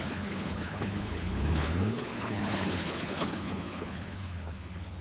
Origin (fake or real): fake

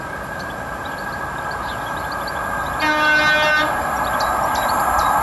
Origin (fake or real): real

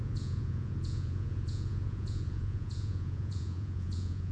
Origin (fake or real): fake